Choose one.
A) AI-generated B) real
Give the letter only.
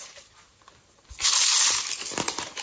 B